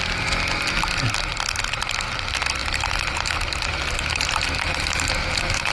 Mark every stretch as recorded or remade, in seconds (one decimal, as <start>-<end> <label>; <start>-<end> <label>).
0.0-2.6 recorded; 2.6-5.7 remade